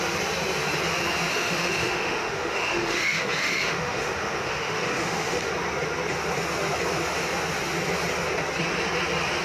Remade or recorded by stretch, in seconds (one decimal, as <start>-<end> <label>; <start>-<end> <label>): 0.0-1.3 recorded; 1.3-5.5 remade; 5.5-9.4 recorded